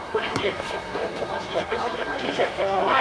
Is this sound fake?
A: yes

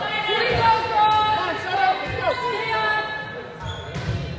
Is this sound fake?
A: no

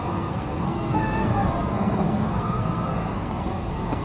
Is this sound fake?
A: yes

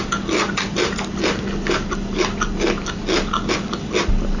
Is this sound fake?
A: no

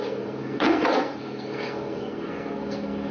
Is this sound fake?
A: yes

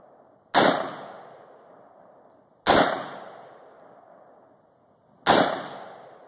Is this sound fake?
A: no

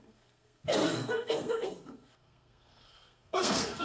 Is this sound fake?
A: yes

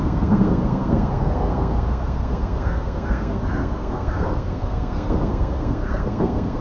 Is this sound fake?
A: yes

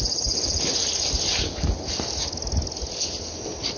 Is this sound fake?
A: no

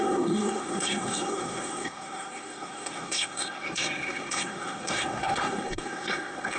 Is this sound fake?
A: yes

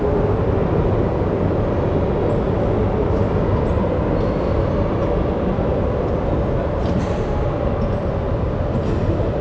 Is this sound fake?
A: no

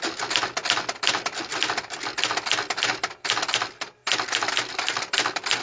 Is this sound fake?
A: no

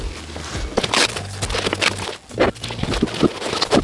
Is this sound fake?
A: no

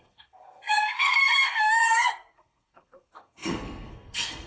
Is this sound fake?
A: yes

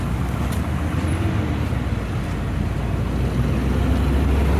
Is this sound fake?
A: no